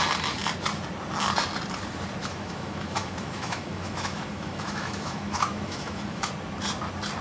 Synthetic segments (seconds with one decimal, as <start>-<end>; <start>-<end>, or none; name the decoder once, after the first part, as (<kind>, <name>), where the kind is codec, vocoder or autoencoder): 2.2-6.3 (autoencoder, DAC-VAE)